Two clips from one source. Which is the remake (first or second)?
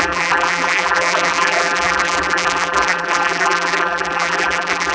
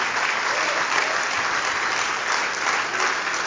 first